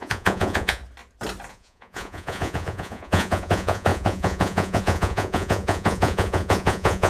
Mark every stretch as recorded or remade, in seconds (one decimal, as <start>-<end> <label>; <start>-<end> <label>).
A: 0.0-0.8 remade; 0.8-1.5 recorded; 1.5-7.1 remade